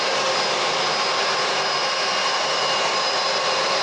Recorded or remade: recorded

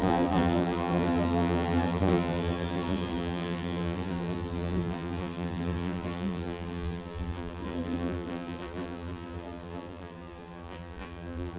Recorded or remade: remade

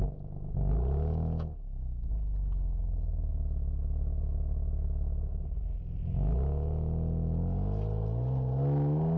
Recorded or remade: recorded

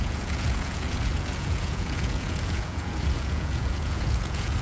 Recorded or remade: remade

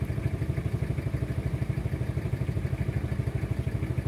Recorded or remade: recorded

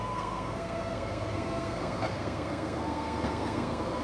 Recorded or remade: remade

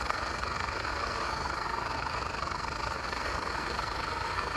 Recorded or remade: remade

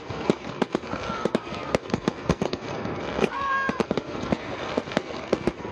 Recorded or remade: remade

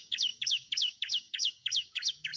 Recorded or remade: remade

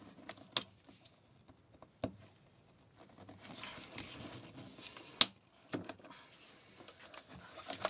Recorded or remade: recorded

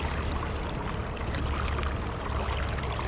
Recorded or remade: recorded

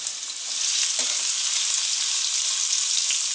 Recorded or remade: recorded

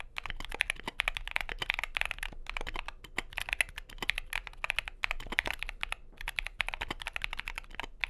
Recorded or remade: recorded